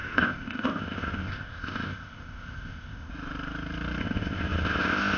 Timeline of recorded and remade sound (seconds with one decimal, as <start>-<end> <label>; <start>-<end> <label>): 0.0-3.1 remade; 3.1-4.0 recorded; 4.0-5.2 remade